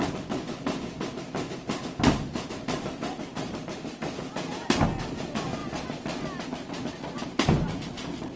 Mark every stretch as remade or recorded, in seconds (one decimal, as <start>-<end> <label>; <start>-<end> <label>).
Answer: 0.0-8.4 recorded